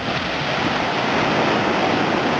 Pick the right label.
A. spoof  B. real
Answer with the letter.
B